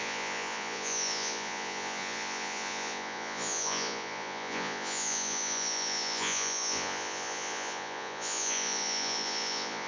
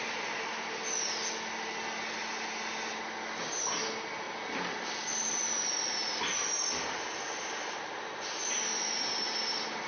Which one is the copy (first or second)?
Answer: first